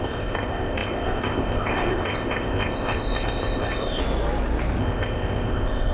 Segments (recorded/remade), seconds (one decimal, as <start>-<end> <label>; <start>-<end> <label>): 0.0-4.0 remade; 4.0-4.8 recorded; 4.8-5.9 remade